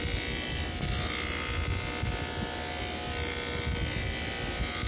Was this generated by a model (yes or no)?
no